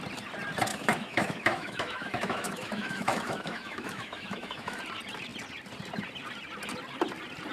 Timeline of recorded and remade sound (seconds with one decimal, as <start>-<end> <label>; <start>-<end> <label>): 0.0-0.7 recorded; 0.7-4.8 remade; 4.8-7.5 recorded